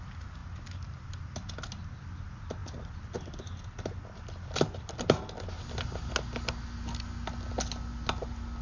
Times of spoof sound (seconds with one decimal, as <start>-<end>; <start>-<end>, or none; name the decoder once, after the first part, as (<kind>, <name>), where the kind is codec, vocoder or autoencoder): none